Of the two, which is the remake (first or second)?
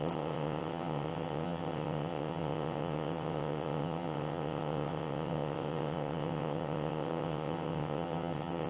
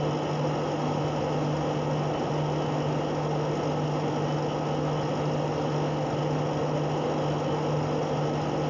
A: first